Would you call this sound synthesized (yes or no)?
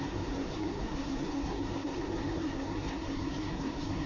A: yes